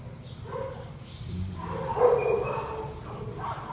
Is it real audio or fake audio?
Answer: real